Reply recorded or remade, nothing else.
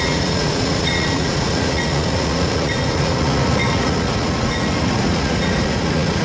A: remade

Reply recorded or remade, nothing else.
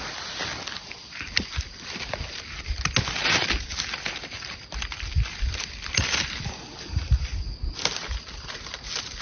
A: recorded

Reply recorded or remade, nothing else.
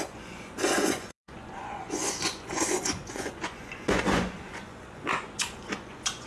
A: remade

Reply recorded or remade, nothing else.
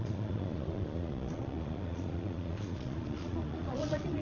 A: remade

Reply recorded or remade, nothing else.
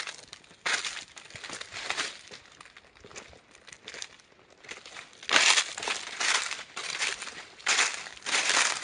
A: recorded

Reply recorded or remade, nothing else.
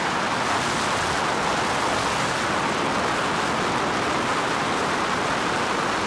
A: recorded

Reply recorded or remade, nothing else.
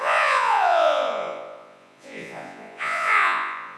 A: remade